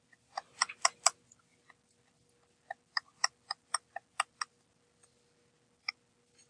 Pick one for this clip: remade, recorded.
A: recorded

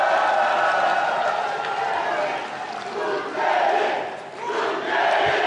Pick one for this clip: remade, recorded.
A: recorded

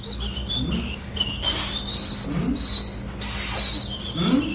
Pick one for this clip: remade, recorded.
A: recorded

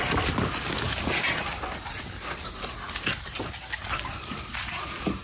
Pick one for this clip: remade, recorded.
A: recorded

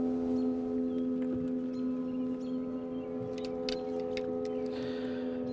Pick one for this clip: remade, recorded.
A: recorded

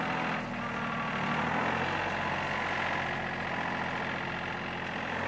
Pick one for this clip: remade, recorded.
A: recorded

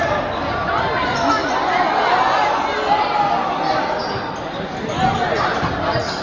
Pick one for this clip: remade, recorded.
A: recorded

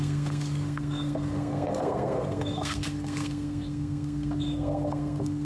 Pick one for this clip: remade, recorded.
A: remade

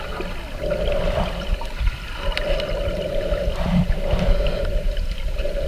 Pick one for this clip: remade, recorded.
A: recorded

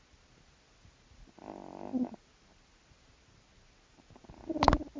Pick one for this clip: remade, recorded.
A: recorded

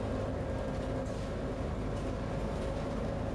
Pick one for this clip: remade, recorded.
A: recorded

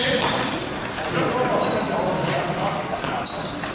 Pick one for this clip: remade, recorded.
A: recorded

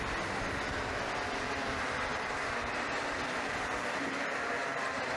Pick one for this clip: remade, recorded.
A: recorded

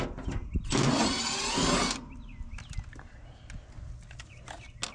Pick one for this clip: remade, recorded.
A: recorded